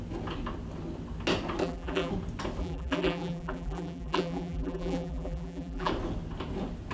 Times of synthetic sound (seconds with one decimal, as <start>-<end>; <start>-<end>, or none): 1.6-2.1; 2.6-5.9